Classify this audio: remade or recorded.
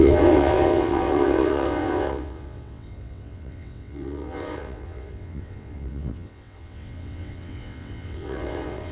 remade